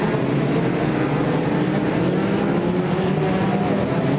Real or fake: real